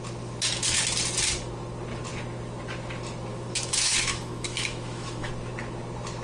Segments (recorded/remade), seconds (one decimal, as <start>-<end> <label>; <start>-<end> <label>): 0.0-3.3 recorded; 3.3-5.3 remade; 5.3-6.2 recorded